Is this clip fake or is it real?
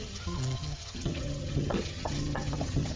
fake